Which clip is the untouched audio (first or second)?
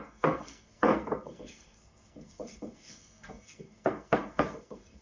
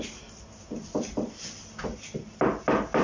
second